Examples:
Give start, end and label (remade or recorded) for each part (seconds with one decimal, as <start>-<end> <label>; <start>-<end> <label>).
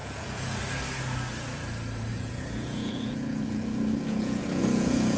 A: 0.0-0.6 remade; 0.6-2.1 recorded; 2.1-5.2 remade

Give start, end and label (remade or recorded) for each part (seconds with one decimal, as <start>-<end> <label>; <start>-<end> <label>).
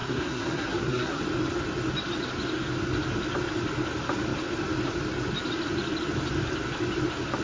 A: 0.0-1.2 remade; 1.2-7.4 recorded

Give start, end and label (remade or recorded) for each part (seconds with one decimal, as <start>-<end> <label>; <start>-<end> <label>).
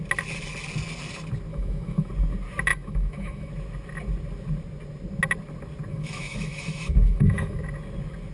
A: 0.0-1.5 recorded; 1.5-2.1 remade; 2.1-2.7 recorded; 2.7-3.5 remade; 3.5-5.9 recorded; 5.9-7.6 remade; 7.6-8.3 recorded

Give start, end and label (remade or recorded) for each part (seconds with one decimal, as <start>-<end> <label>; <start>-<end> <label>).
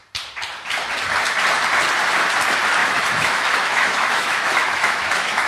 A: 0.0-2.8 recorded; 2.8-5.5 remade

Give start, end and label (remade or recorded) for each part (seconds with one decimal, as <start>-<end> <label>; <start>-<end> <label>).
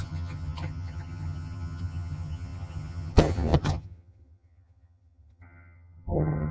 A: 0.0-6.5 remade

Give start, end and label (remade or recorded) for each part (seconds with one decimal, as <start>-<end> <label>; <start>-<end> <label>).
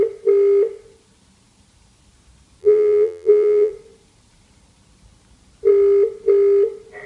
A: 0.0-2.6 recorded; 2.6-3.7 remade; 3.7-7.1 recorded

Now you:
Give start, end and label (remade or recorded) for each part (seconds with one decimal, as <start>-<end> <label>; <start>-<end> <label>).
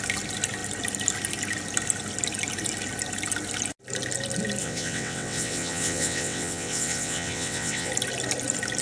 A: 0.0-4.6 recorded; 4.6-7.9 remade; 7.9-8.8 recorded